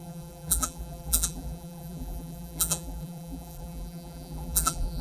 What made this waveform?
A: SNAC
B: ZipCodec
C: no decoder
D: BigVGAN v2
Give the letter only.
D